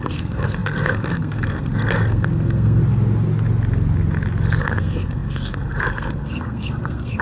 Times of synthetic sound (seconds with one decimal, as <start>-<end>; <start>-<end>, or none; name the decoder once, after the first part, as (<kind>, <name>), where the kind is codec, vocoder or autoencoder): 0.0-2.8 (codec, SNAC); 4.6-7.2

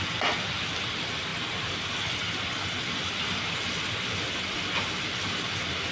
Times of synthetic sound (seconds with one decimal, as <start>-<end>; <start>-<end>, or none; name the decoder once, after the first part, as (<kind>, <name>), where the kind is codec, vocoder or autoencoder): none

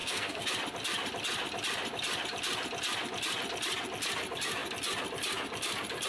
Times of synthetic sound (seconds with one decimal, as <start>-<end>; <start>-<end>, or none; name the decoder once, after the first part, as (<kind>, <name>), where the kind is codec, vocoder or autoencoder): 0.0-0.5 (codec, SNAC)

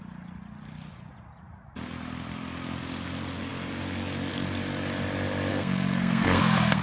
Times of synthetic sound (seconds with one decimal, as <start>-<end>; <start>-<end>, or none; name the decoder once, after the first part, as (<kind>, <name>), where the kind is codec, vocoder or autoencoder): 5.5-6.8 (codec, SNAC)